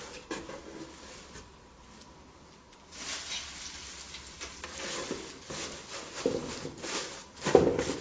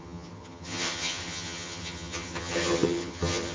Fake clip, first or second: second